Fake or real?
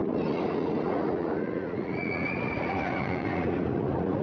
fake